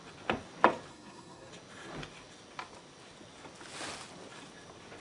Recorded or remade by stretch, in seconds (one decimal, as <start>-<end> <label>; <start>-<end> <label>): 0.0-0.9 recorded; 0.9-1.5 remade; 1.5-5.0 recorded